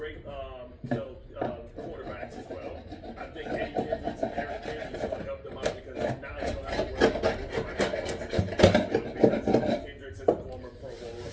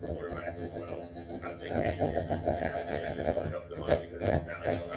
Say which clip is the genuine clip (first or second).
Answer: first